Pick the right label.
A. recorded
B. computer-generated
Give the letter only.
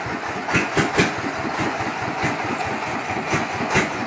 B